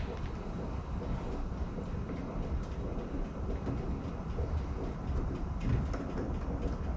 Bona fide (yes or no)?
yes